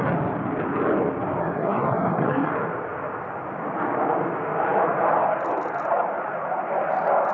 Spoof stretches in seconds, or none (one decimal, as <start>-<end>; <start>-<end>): 1.4-2.5